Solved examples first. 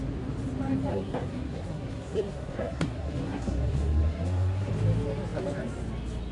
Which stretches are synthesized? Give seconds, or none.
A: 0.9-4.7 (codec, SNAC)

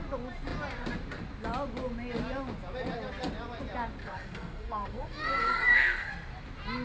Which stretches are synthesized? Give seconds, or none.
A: 4.0-6.1 (codec, SNAC)

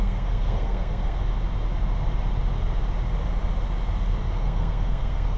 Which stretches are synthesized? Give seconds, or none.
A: 0.0-1.2 (codec, SNAC); 4.4-5.4

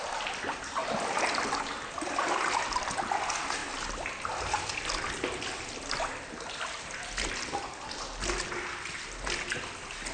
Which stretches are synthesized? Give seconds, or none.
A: none

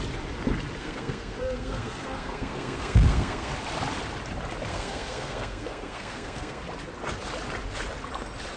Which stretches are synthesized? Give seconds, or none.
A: 0.8-3.5 (codec, SNAC); 4.7-6.6

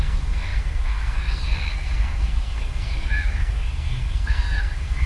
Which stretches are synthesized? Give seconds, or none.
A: 0.0-5.1 (codec, SNAC)

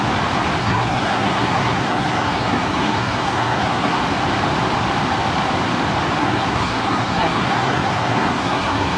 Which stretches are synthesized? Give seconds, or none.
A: 0.6-4.0 (codec, SNAC); 6.2-9.0

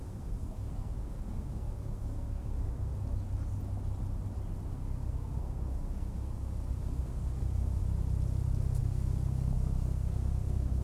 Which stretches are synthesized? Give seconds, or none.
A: 0.0-2.9 (codec, SNAC); 4.7-7.8; 8.8-10.8